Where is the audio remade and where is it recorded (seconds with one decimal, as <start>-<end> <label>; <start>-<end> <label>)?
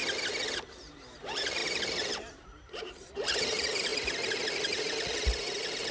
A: 0.0-0.9 recorded; 0.9-3.9 remade; 3.9-4.8 recorded; 4.8-5.9 remade